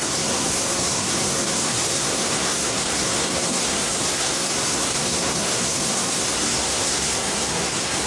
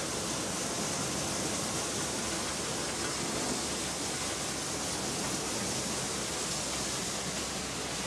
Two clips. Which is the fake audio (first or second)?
first